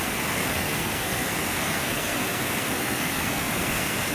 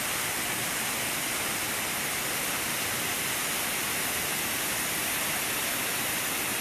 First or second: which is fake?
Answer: first